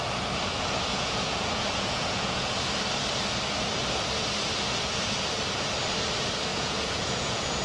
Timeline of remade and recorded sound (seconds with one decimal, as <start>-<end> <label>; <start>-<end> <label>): 0.0-0.9 recorded; 0.9-2.6 remade; 2.6-6.5 recorded; 6.5-7.6 remade